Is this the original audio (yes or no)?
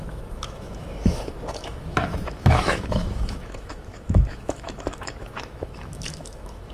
no